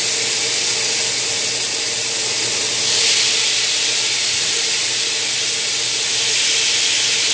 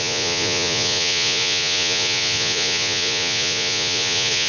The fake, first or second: second